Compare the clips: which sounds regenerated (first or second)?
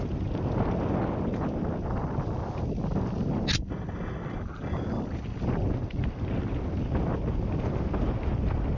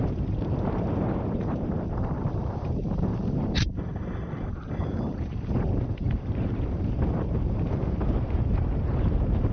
second